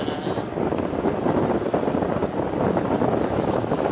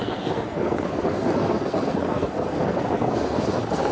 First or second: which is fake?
second